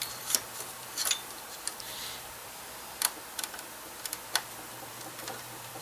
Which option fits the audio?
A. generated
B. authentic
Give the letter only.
A